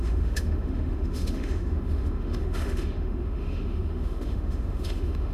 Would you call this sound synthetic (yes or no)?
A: yes